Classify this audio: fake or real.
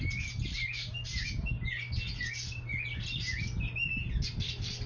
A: real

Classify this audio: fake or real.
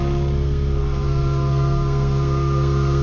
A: fake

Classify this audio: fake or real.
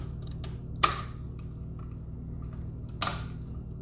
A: real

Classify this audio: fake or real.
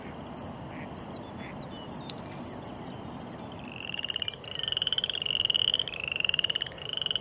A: real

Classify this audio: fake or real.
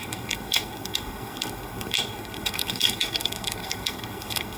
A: fake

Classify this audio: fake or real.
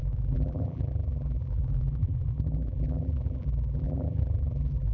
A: fake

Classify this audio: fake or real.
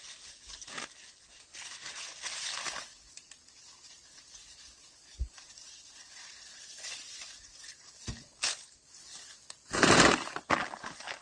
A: real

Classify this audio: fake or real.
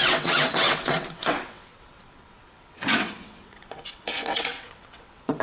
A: fake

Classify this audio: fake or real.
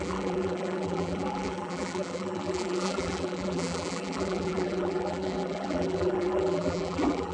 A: fake